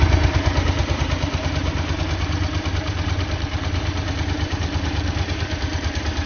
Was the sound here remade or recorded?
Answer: remade